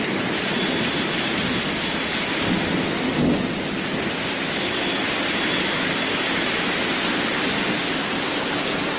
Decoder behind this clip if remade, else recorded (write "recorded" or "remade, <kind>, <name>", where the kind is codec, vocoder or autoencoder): recorded